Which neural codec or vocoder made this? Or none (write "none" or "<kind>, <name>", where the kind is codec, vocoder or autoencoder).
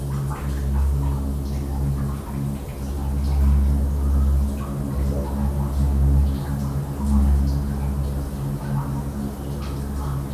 none